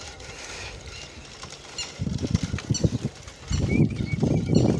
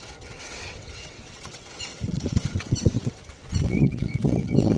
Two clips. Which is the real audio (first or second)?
first